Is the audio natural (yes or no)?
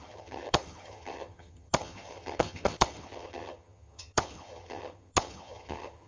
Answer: no